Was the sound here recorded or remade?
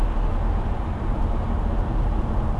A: recorded